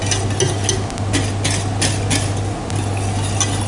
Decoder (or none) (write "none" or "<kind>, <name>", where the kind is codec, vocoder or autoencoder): none